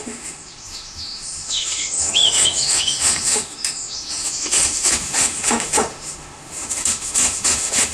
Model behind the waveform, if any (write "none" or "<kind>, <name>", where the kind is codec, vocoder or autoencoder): autoencoder, DAC-VAE